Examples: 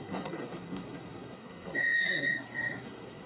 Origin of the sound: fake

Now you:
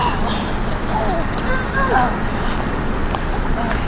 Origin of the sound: real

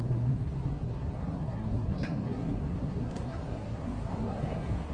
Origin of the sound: fake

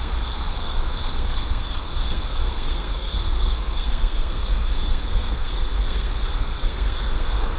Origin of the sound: fake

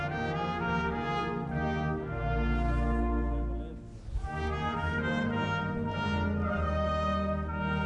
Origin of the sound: real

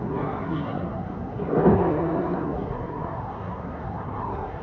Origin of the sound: fake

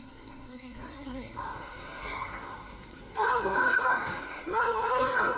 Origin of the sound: fake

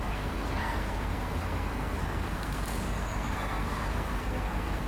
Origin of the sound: fake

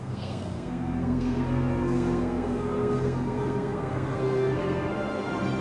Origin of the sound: fake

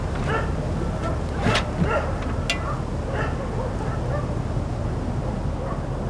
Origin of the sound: real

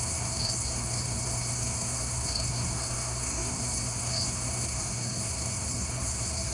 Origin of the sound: fake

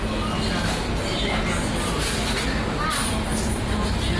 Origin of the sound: real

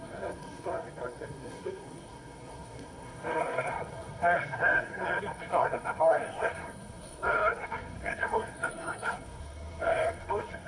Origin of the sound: fake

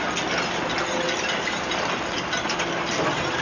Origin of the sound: real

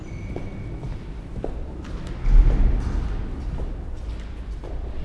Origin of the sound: real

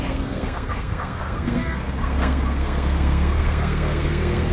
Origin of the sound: fake